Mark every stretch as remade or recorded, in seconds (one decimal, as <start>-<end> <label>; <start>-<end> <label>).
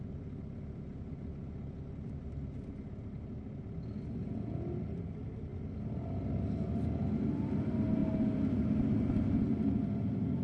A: 0.0-10.4 recorded